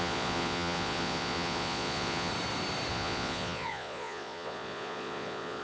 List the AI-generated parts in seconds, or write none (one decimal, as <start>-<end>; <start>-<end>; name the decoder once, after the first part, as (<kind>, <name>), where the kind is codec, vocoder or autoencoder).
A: 0.0-2.3 (vocoder, Vocos); 2.9-5.6